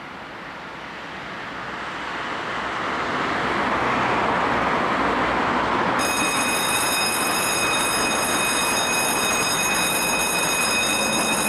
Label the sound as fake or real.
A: real